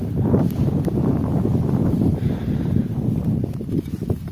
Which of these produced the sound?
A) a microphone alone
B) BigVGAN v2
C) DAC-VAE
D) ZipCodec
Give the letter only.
A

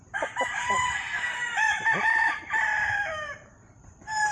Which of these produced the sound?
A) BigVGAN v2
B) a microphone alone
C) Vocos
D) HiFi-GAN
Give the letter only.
A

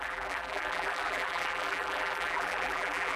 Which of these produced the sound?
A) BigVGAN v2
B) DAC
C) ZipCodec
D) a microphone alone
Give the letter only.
A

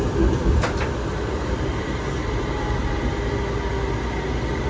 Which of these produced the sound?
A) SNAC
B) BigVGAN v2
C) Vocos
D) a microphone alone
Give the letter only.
D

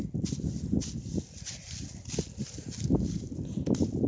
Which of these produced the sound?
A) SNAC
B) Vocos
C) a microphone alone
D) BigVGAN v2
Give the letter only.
C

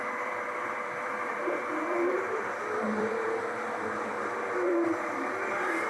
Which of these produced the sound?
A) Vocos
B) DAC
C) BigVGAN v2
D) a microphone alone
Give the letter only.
C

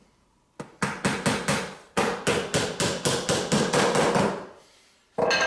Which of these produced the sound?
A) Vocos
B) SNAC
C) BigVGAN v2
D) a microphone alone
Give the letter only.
D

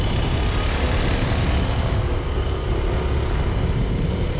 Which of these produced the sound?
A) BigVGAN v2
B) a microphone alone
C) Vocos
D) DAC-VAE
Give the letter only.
B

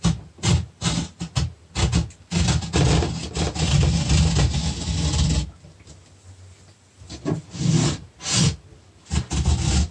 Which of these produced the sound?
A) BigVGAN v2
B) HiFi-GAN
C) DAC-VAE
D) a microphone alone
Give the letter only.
D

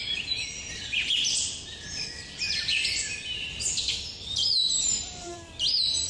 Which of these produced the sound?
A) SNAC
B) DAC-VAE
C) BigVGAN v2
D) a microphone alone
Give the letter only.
C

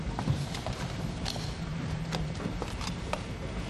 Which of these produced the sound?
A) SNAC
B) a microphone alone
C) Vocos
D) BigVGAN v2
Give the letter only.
D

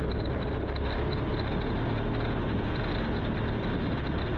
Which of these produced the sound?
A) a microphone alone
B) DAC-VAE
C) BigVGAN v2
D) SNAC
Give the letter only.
A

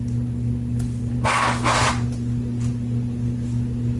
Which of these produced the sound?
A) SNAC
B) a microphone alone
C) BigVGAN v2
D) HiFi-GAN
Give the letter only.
B